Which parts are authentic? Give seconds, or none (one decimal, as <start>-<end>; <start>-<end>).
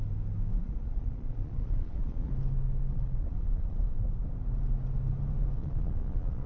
0.0-0.6; 2.3-2.9; 3.8-5.6